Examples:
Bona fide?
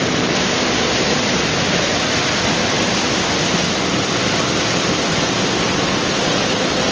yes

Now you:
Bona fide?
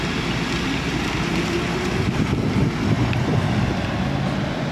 yes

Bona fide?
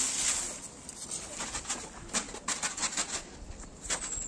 yes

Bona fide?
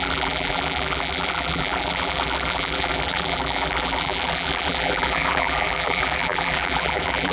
no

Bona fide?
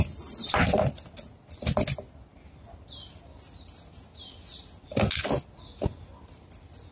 yes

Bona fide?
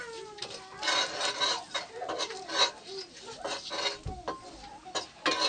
yes